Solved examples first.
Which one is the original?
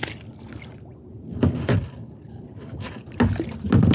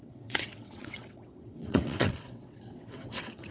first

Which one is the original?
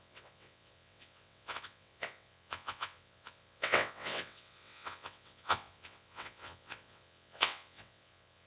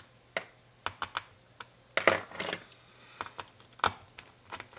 second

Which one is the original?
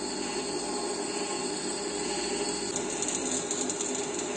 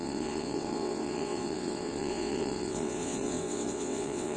first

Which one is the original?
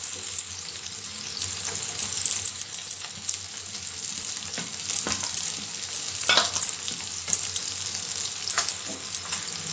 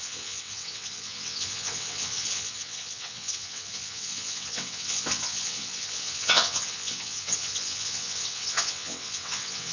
first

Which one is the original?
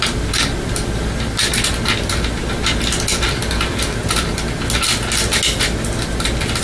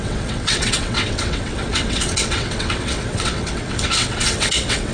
first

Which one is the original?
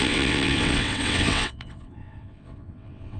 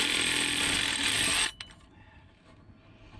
second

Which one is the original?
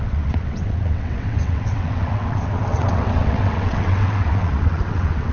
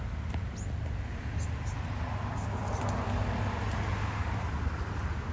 second